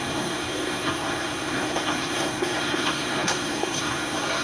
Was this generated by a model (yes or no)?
yes